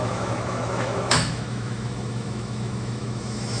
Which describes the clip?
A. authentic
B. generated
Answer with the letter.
B